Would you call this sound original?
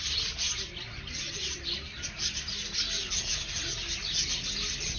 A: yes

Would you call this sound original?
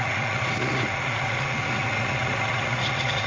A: no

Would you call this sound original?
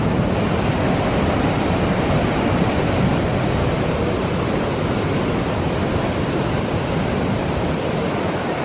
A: yes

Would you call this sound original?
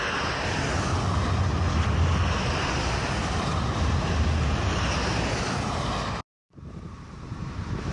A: yes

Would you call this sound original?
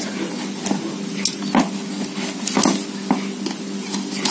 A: yes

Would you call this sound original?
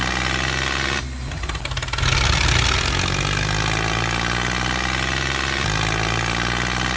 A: yes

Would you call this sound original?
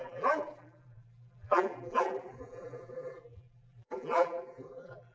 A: no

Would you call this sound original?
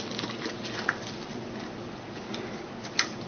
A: yes